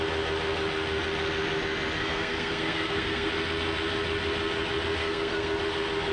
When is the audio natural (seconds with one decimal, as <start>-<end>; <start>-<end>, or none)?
0.0-2.0; 3.3-5.0; 5.6-6.1